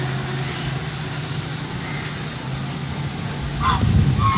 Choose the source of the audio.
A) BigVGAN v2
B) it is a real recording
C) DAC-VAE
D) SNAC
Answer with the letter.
B